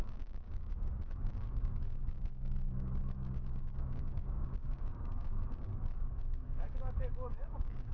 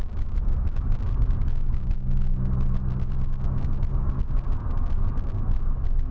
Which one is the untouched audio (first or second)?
second